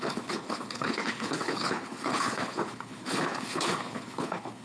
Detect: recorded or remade remade